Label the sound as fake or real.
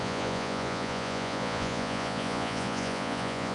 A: fake